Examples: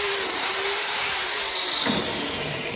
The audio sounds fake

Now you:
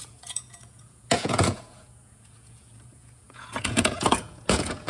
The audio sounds fake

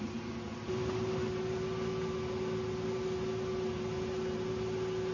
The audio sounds real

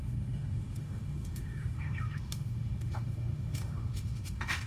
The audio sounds fake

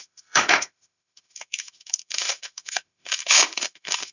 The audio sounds fake